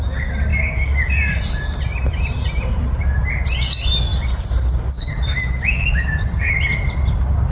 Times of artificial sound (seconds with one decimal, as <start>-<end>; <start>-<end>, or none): 0.5-3.3; 4.1-4.7